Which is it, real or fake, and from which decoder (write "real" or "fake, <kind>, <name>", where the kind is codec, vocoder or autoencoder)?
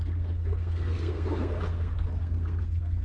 fake, codec, SNAC